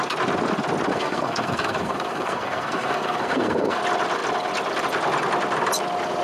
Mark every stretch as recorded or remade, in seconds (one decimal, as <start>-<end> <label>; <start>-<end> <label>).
0.0-0.9 recorded; 0.9-3.8 remade; 3.8-6.2 recorded